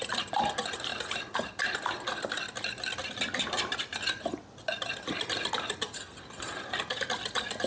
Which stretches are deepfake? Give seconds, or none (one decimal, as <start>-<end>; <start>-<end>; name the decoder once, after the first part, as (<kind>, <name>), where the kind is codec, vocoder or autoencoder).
0.0-0.9 (vocoder, BigVGAN v2); 5.5-7.7